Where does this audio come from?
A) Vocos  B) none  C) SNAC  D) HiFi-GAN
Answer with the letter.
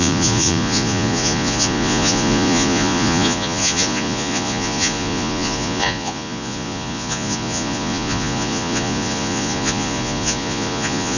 A